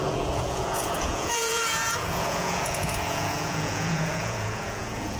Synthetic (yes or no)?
yes